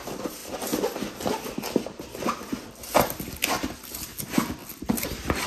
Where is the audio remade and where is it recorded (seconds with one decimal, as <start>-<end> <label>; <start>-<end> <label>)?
0.0-4.6 recorded; 4.6-5.5 remade

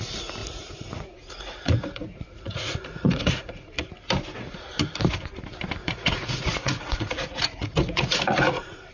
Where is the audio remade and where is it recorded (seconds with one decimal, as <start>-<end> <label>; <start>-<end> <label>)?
0.0-0.4 recorded; 0.4-3.9 remade; 3.9-5.8 recorded; 5.8-8.9 remade

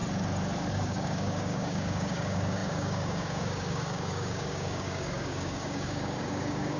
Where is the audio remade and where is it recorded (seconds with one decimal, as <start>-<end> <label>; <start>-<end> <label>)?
0.0-0.7 recorded; 0.7-6.8 remade